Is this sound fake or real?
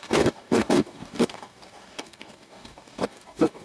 fake